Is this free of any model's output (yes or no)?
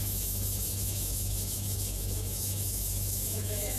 no